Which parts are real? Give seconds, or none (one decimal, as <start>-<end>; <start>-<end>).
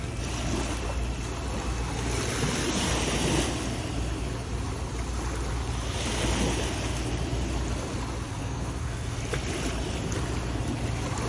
0.0-8.4; 9.2-11.3